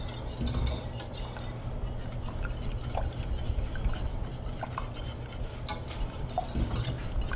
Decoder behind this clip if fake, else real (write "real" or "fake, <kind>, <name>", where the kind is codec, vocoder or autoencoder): real